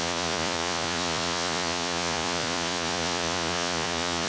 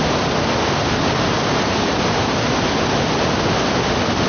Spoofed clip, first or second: first